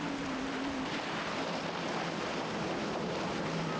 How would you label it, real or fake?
real